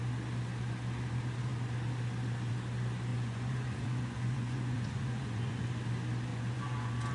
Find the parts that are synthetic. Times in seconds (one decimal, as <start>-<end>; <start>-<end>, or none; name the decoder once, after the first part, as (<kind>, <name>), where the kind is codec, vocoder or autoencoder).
3.1-5.6 (vocoder, Vocos); 6.3-7.1